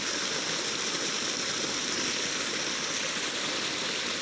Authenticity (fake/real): real